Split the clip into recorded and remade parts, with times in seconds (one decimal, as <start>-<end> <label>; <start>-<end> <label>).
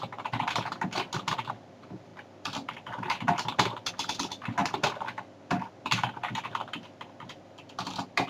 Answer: 0.0-8.3 recorded